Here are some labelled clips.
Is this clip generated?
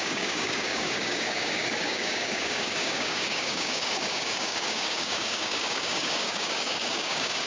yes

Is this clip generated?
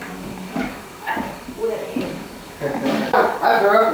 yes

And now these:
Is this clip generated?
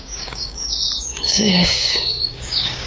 yes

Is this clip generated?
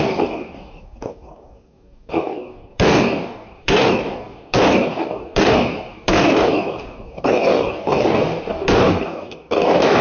yes